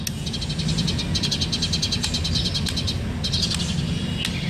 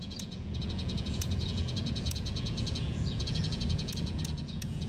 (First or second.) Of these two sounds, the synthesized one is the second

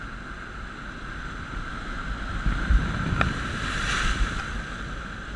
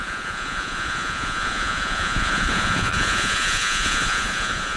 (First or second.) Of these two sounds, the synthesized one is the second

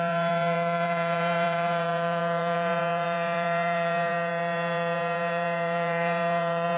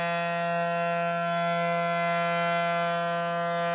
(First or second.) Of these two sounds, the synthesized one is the first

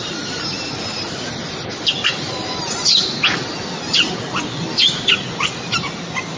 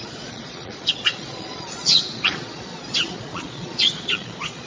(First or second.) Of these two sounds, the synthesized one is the second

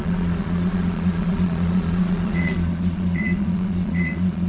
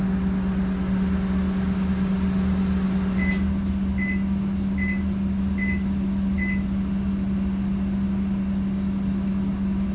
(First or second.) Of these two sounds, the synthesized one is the first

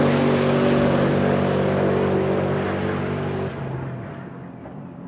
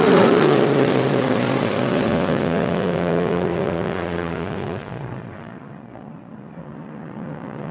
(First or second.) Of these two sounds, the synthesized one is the second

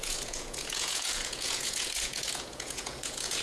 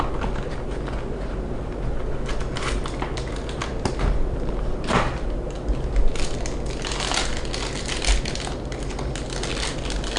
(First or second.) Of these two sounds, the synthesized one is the first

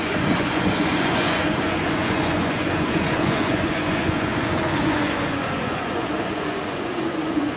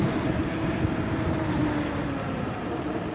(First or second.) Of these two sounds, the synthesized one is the first